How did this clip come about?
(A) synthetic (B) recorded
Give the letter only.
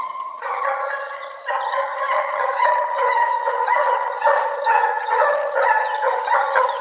A